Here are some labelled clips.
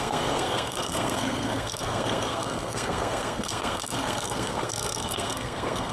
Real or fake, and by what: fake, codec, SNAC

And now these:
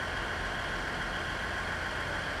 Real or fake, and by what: real